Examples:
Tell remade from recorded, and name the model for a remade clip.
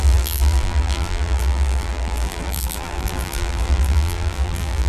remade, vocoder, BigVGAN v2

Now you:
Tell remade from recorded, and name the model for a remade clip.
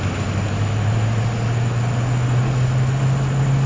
recorded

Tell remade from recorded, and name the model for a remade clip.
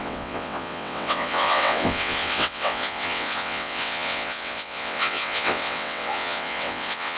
remade, vocoder, WaveNeXt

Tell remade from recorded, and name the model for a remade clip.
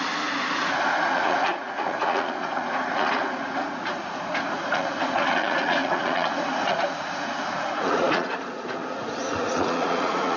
remade, vocoder, Vocos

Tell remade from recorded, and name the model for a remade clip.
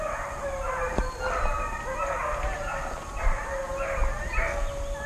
recorded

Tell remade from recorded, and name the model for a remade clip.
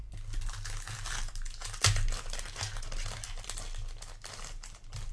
recorded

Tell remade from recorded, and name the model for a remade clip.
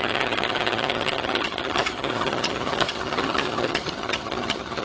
remade, vocoder, HiFi-GAN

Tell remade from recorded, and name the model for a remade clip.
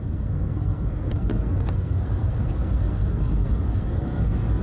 remade, codec, SNAC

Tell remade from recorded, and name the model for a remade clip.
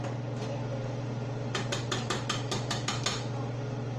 recorded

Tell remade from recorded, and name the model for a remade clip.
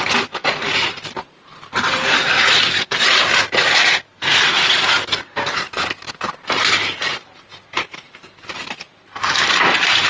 remade, vocoder, BigVGAN v2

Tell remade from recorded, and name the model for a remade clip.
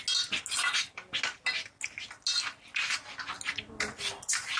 recorded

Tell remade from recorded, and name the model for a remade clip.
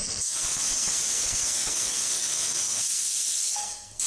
remade, codec, SNAC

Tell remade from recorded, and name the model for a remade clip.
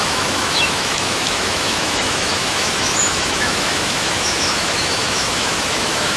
remade, autoencoder, DAC-VAE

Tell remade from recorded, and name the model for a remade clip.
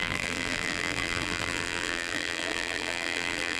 remade, vocoder, BigVGAN v2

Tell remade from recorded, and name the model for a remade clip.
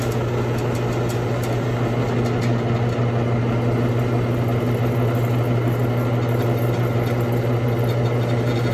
recorded